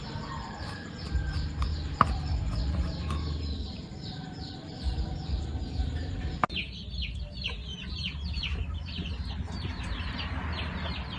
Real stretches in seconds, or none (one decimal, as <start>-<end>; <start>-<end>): 0.0-7.7; 10.4-11.2